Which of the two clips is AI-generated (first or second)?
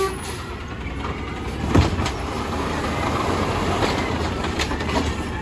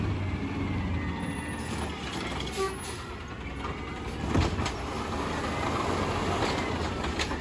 first